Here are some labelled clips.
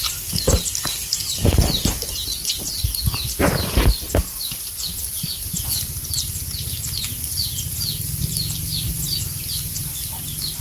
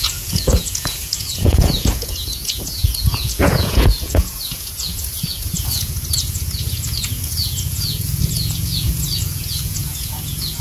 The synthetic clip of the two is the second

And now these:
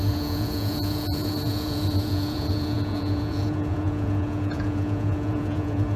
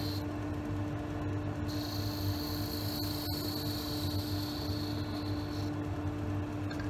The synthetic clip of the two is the first